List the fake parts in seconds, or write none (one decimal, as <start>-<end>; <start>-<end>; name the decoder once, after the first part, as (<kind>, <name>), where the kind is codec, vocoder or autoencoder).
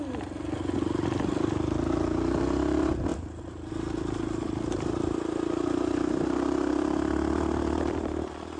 3.1-3.7 (vocoder, BigVGAN v2)